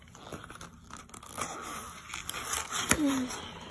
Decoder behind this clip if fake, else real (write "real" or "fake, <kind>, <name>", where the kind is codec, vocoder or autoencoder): real